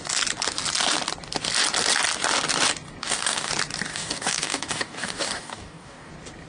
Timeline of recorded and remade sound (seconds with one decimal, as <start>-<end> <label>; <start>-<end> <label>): 0.0-3.0 recorded; 3.0-3.5 remade; 3.5-3.9 recorded; 3.9-6.1 remade; 6.1-6.5 recorded